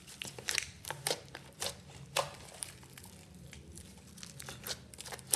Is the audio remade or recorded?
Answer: remade